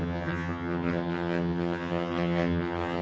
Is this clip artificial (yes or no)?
yes